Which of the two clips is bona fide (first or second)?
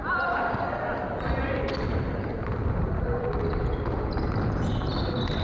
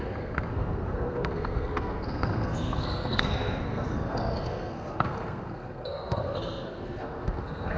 first